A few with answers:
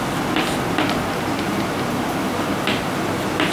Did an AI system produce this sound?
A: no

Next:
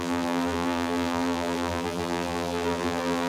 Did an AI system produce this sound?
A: yes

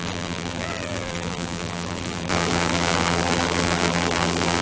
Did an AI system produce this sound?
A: yes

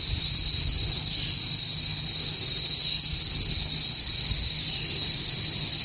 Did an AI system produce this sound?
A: no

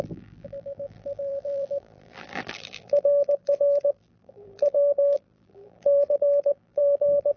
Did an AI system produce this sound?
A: yes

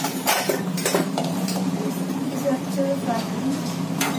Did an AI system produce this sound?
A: yes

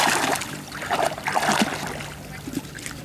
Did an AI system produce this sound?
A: no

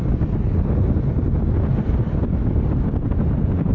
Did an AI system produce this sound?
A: no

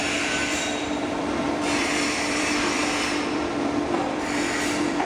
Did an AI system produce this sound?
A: yes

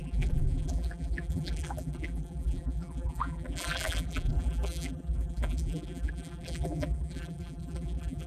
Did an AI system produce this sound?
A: yes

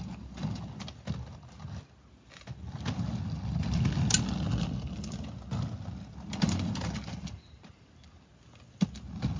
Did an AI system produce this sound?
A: no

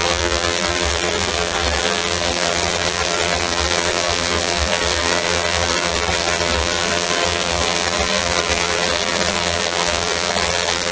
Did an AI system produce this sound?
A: yes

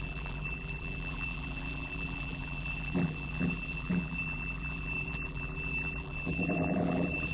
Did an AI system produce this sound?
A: yes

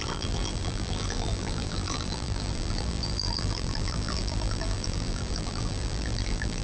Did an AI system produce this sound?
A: yes